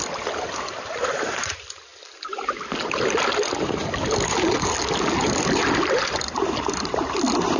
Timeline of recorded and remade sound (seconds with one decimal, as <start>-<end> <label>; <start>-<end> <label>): 0.0-7.6 recorded

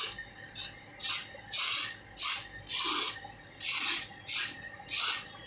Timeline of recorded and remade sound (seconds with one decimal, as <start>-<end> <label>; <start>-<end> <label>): 0.0-5.5 recorded

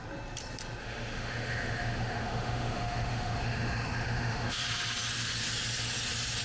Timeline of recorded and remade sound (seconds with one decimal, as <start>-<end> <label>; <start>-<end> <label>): 0.0-0.8 recorded; 0.8-4.6 remade; 4.6-6.4 recorded

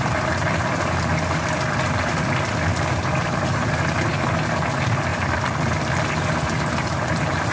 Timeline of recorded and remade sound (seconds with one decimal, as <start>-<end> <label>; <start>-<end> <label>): 0.0-2.7 recorded; 2.7-4.4 remade; 4.4-5.1 recorded; 5.1-6.3 remade; 6.3-7.5 recorded

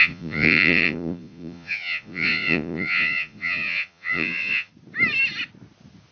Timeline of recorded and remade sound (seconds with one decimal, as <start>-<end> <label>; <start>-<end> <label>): 0.0-4.7 remade; 4.7-6.1 recorded

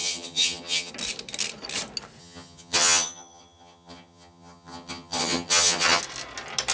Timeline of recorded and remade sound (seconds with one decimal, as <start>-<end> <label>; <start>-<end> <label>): 0.0-0.9 remade; 0.9-2.2 recorded; 2.2-6.0 remade; 6.0-6.7 recorded

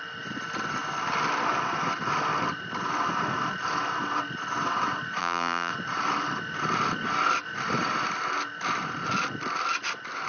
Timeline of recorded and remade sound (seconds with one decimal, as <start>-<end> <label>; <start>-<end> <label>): 0.0-5.2 recorded; 5.2-5.7 remade; 5.7-10.3 recorded

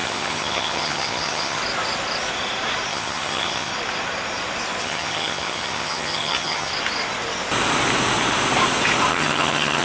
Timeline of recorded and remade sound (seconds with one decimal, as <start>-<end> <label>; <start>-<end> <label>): 0.0-1.6 remade; 1.6-2.9 recorded; 2.9-3.7 remade; 3.7-4.8 recorded; 4.8-6.7 remade; 6.7-9.1 recorded; 9.1-9.8 remade